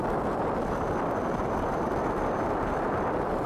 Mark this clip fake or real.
real